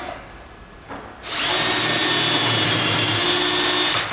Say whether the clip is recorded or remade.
recorded